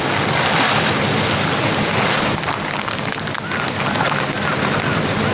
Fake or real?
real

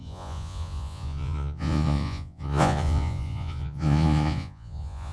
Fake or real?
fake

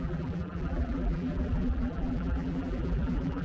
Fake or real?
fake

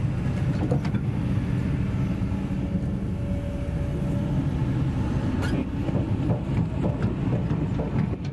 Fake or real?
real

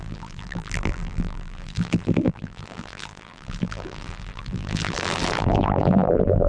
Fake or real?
fake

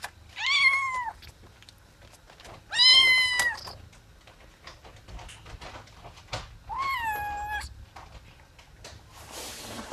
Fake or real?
real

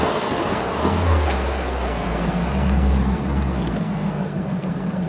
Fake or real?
fake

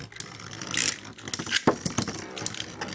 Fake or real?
real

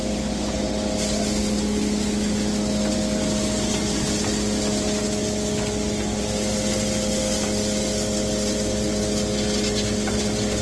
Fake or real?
real